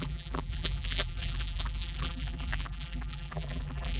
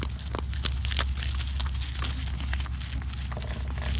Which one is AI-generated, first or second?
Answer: first